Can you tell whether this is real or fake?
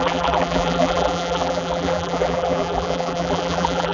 fake